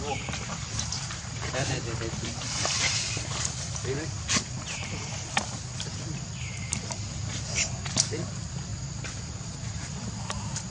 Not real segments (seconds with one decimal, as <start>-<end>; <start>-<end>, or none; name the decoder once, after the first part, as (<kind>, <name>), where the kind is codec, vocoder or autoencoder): 0.0-10.7 (vocoder, BigVGAN v2)